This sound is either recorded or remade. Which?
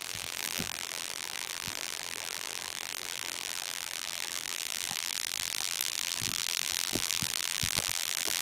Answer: remade